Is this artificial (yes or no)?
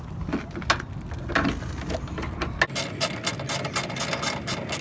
no